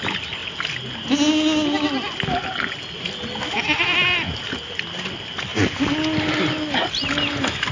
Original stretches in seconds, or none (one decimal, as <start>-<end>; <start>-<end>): 0.0-7.7